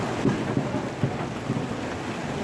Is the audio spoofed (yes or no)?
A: no